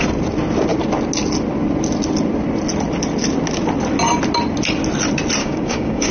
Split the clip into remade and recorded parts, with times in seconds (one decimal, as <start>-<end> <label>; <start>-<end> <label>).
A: 0.0-5.4 recorded; 5.4-6.1 remade